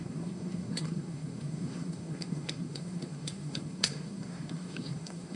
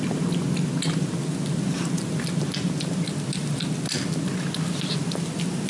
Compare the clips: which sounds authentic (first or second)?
second